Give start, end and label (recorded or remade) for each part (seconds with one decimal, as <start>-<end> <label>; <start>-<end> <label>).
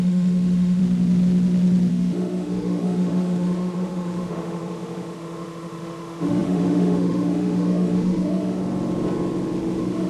0.0-0.8 remade; 0.8-1.9 recorded; 1.9-8.6 remade; 8.6-9.6 recorded; 9.6-10.1 remade